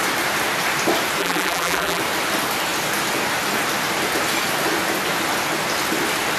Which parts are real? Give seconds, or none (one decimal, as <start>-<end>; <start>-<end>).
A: 0.0-1.2; 2.0-6.4